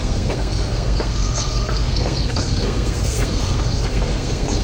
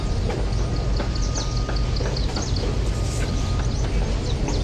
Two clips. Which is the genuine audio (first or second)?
second